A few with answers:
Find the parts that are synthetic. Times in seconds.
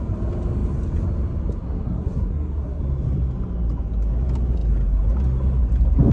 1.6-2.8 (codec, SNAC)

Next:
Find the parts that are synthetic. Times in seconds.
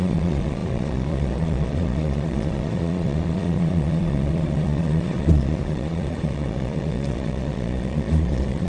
0.0-8.7 (vocoder, Vocos)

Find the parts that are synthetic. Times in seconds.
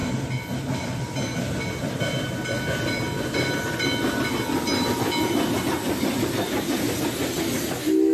none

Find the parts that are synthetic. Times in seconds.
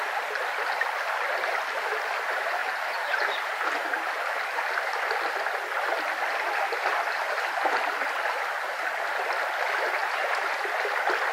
2.6-4.1 (vocoder, BigVGAN v2); 10.0-10.5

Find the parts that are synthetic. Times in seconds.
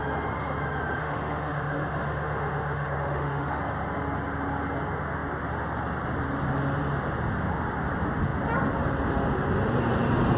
1.0-3.6 (autoencoder, DAC-VAE)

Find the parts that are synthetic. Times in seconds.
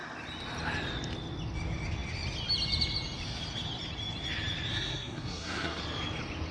4.7-5.8 (codec, SNAC)